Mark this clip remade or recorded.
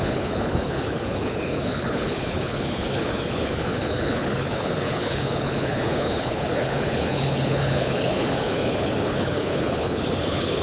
remade